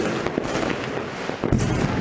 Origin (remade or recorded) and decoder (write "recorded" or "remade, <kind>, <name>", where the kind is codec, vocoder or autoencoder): recorded